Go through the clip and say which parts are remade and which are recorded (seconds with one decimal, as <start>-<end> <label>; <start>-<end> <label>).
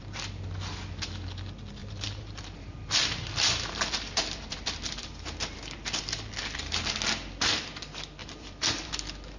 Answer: 0.0-1.8 recorded; 1.8-6.8 remade; 6.8-8.2 recorded; 8.2-8.9 remade; 8.9-9.4 recorded